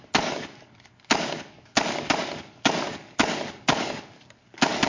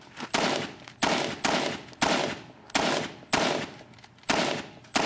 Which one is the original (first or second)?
second